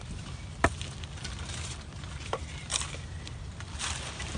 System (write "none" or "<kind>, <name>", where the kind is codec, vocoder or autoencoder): none